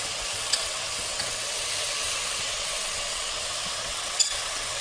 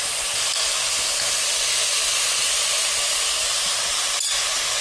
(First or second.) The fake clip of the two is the first